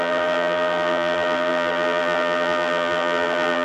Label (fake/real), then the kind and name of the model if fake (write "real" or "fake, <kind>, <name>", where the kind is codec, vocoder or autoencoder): fake, vocoder, BigVGAN v2